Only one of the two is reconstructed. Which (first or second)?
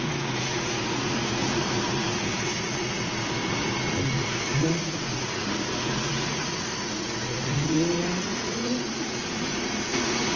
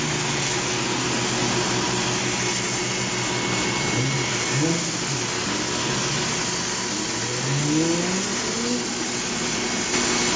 first